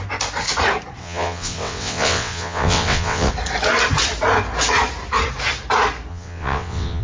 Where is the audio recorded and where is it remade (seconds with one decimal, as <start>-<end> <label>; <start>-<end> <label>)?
0.0-1.0 recorded; 1.0-3.3 remade; 3.3-6.1 recorded; 6.1-7.0 remade